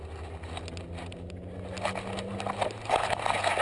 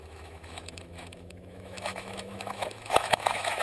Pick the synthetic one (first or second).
second